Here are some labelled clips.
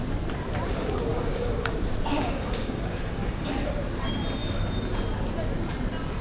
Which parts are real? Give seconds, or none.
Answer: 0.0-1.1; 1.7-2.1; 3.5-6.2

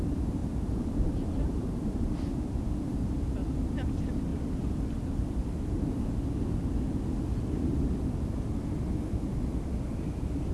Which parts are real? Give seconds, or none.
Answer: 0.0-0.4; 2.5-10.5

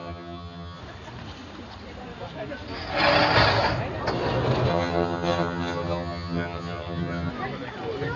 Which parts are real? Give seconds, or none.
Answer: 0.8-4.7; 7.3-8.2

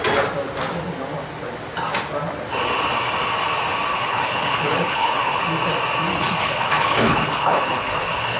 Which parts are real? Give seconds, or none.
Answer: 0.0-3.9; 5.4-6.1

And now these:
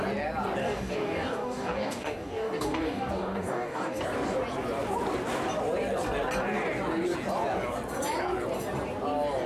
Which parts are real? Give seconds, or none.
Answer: 0.0-0.6; 4.0-9.5